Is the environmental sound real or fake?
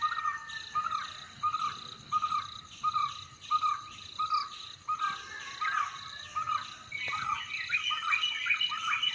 real